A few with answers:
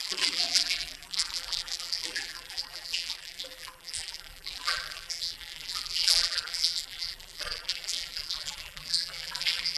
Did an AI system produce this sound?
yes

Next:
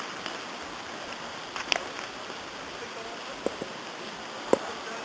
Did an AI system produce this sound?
no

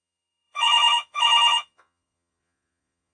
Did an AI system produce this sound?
yes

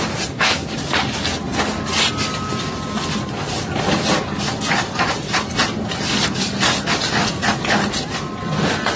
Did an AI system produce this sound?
no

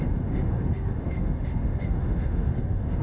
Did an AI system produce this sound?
yes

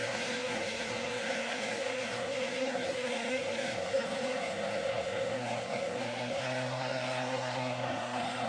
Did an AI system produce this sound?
yes